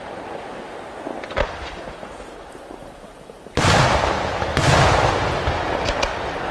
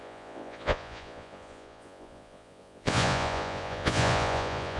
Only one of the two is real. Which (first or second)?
first